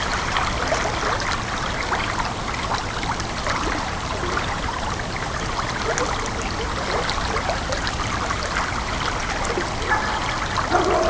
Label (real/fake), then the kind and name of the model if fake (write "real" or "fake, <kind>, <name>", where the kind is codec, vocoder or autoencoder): real